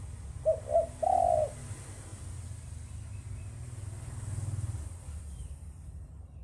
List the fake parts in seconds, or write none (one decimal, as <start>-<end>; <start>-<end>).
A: none